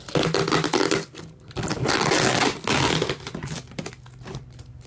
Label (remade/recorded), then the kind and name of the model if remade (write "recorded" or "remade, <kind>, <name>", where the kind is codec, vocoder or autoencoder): recorded